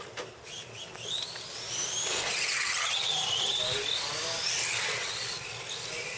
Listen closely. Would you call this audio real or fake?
real